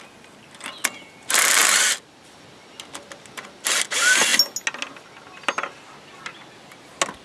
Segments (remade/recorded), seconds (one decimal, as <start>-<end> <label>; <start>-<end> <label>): 0.0-7.2 recorded